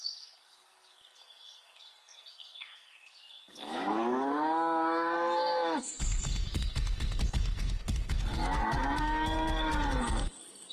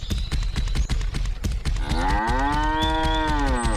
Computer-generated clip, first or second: first